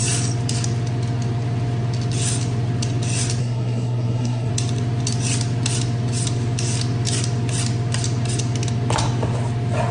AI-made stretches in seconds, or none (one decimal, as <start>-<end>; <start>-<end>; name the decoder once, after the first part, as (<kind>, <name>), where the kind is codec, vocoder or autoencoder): 3.4-4.5 (codec, SNAC)